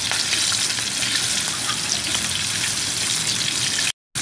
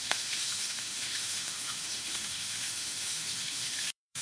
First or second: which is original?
first